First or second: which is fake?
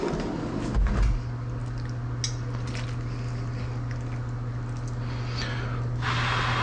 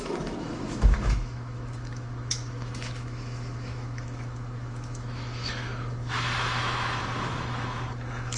second